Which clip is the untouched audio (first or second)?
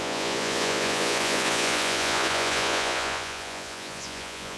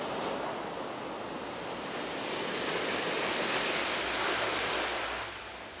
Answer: second